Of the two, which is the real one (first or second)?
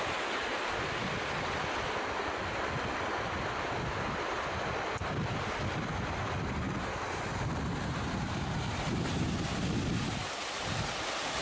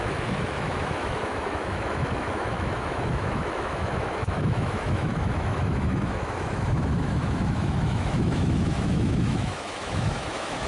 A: first